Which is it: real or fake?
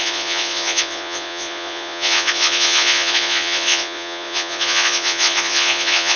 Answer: fake